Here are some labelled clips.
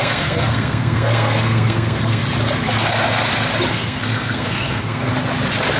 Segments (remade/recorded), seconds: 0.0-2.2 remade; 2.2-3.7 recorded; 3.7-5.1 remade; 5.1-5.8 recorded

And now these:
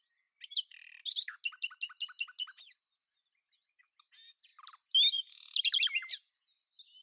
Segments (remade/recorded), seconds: 0.0-7.0 recorded

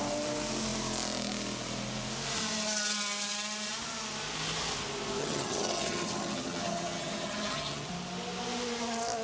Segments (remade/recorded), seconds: 0.0-5.2 recorded; 5.2-7.9 remade; 7.9-9.2 recorded

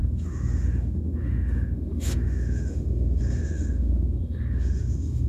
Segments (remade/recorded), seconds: 0.0-5.3 remade